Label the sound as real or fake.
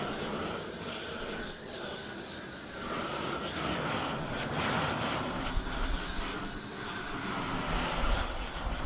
real